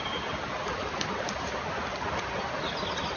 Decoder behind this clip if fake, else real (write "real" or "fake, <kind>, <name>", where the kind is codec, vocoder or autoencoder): real